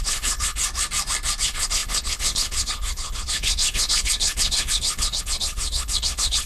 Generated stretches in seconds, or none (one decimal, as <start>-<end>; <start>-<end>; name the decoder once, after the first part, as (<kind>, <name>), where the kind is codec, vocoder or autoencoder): 0.0-0.6 (codec, HILCodec); 1.4-6.5